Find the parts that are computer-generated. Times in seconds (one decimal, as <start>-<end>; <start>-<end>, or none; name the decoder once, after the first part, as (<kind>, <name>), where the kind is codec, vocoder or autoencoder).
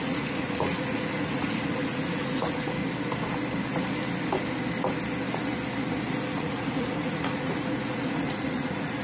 0.0-2.8 (vocoder, Vocos); 6.3-9.0